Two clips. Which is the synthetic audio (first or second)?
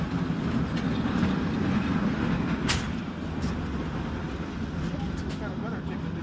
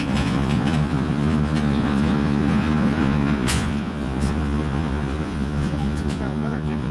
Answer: second